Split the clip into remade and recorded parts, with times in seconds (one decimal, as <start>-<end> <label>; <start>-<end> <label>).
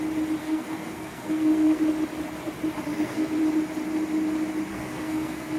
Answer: 0.0-0.4 recorded; 0.4-1.8 remade; 1.8-2.9 recorded; 2.9-3.4 remade; 3.4-4.7 recorded; 4.7-5.6 remade